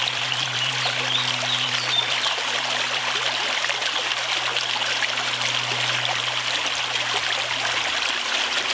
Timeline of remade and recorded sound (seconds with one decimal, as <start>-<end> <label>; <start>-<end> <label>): 0.0-3.8 remade; 3.8-8.0 recorded; 8.0-8.7 remade